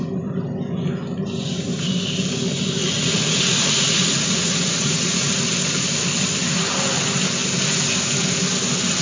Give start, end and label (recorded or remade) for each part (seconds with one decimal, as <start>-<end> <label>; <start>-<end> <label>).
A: 0.0-2.8 recorded; 2.8-5.3 remade; 5.3-9.0 recorded

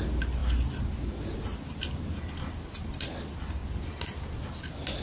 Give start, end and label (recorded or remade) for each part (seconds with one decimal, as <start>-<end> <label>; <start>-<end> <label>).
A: 0.0-5.0 recorded

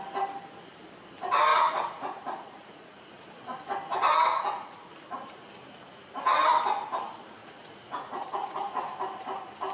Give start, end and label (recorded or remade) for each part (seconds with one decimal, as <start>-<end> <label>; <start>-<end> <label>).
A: 0.0-1.5 recorded; 1.5-3.3 remade; 3.3-4.3 recorded; 4.3-4.9 remade; 4.9-7.4 recorded; 7.4-8.7 remade; 8.7-9.7 recorded

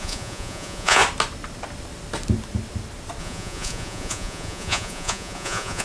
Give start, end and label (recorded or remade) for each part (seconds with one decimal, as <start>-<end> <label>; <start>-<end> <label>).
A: 0.0-1.0 remade; 1.0-3.2 recorded; 3.2-5.8 remade

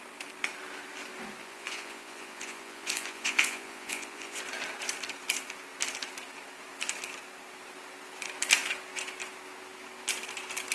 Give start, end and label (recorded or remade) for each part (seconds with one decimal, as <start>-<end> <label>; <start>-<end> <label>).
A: 0.0-1.4 recorded; 1.4-4.4 remade; 4.4-10.7 recorded

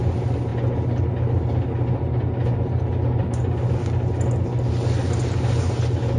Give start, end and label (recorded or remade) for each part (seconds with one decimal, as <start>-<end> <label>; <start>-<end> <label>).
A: 0.0-6.2 recorded

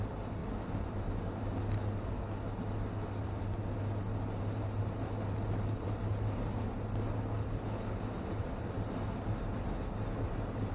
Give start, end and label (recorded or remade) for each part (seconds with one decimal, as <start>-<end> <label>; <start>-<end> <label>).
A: 0.0-10.7 recorded

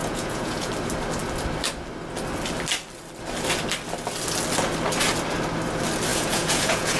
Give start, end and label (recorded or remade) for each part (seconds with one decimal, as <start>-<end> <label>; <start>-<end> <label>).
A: 0.0-0.7 remade; 0.7-6.1 recorded; 6.1-7.0 remade